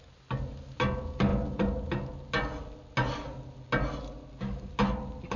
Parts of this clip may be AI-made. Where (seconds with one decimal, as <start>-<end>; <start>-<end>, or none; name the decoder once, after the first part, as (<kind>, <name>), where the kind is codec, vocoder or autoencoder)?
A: none